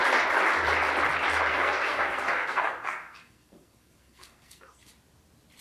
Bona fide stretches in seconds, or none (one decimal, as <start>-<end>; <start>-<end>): 0.0-1.5; 4.9-5.6